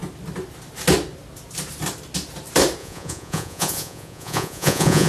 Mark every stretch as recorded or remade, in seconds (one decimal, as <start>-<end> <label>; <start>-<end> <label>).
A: 0.0-2.8 recorded; 2.8-5.1 remade